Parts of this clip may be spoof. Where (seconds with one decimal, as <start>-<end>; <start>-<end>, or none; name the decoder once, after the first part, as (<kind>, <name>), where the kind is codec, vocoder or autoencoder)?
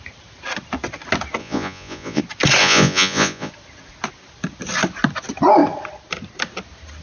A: 1.4-2.2 (vocoder, Vocos); 2.6-3.5